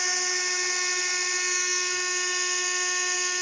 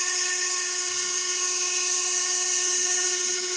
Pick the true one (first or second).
first